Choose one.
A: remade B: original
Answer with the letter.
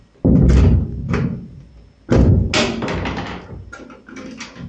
B